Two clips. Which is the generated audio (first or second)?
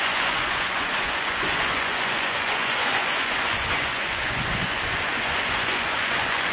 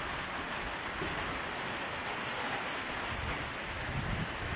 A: first